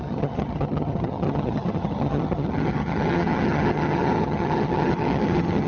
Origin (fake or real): fake